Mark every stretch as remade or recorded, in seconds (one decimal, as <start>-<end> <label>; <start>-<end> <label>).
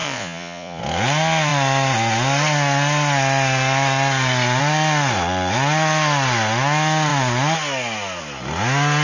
0.0-0.8 remade; 0.8-9.0 recorded